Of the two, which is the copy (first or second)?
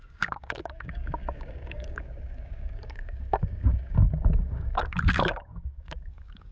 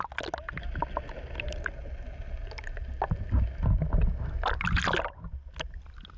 first